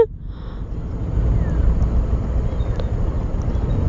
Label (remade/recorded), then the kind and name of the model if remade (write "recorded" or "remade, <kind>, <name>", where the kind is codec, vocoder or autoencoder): recorded